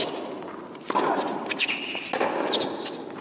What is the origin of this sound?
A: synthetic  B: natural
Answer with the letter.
B